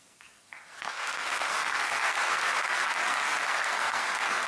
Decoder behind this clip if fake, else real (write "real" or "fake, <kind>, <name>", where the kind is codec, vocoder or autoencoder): fake, codec, SNAC